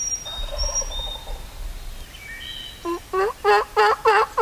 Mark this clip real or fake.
real